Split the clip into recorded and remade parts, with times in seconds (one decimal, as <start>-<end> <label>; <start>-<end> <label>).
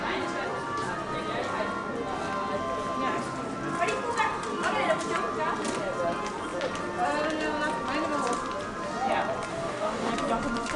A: 0.0-9.5 recorded; 9.5-10.1 remade; 10.1-10.8 recorded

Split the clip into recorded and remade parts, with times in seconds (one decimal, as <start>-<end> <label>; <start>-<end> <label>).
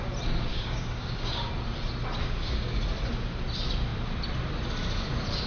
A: 0.0-0.5 recorded; 0.5-1.5 remade; 1.5-2.2 recorded; 2.2-2.8 remade; 2.8-5.5 recorded